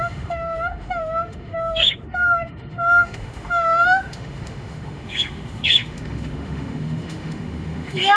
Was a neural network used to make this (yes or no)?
yes